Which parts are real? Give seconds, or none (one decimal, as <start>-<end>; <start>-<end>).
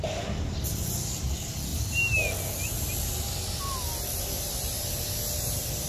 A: 0.0-5.9